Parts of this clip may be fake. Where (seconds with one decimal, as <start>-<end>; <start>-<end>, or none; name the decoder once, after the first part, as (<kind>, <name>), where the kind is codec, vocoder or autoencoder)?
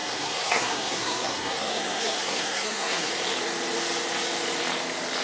0.0-3.1 (codec, SNAC)